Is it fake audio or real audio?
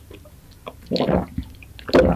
real